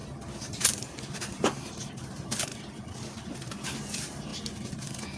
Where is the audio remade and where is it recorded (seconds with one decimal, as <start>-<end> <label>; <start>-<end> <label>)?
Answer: 0.0-1.4 recorded; 1.4-2.5 remade; 2.5-3.1 recorded; 3.1-4.3 remade; 4.3-5.2 recorded